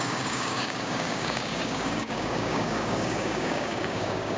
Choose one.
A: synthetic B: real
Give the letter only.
A